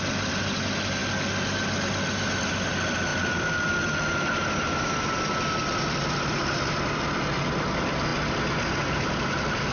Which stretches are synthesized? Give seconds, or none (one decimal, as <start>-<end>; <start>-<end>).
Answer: none